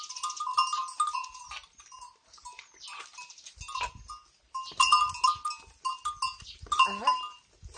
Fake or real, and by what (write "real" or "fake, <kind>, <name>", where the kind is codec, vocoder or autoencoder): real